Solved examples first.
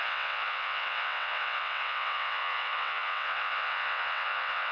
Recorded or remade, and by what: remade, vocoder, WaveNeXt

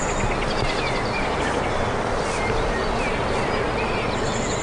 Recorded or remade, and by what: recorded